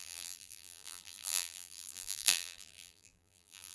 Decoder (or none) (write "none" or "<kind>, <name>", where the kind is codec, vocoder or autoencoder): vocoder, BigVGAN v2